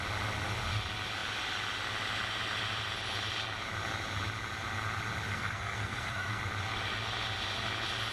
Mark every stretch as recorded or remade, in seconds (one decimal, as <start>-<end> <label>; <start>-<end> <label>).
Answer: 0.0-5.3 recorded; 5.3-6.4 remade; 6.4-8.1 recorded